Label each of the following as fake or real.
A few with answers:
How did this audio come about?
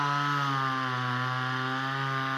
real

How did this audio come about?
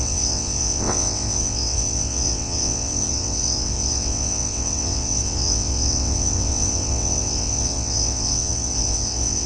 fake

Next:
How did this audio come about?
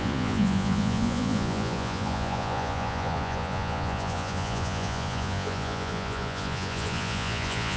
fake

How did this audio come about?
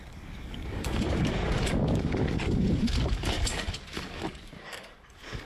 fake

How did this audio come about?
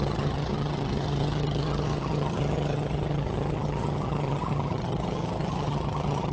fake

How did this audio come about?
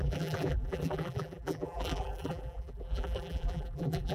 fake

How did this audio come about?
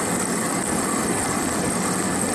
real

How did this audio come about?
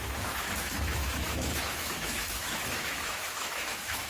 fake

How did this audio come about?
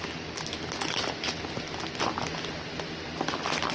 real